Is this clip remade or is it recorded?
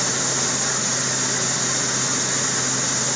recorded